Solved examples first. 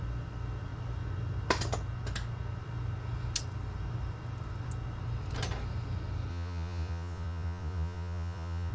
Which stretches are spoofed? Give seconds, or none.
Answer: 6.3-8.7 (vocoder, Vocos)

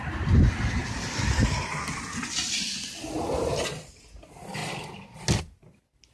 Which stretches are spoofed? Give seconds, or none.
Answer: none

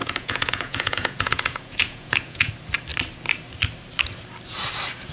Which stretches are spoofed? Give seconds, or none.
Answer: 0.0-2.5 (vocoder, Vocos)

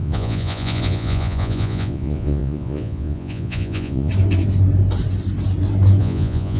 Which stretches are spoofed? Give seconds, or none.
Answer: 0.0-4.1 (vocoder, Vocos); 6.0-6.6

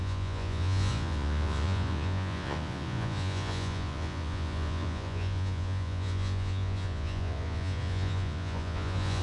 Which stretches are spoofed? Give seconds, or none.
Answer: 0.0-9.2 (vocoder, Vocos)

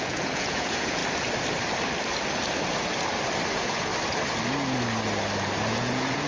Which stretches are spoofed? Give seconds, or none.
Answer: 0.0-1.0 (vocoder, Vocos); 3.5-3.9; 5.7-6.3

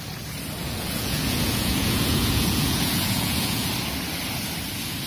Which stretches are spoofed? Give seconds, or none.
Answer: 0.6-3.7 (vocoder, Vocos)

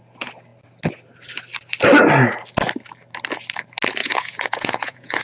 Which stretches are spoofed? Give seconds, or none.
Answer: 4.0-5.2 (vocoder, Vocos)